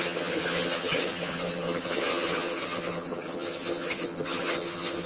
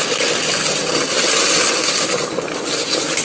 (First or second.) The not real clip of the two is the first